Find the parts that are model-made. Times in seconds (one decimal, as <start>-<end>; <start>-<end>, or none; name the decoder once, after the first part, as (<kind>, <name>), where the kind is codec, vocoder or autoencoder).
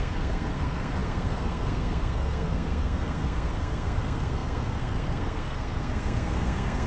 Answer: 0.0-6.9 (codec, SNAC)